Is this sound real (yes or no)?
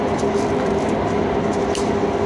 yes